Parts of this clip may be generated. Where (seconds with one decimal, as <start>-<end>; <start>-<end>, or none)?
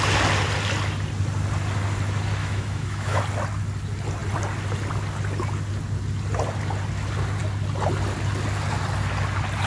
2.4-3.2